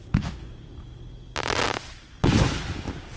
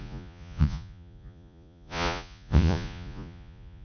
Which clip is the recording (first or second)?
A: first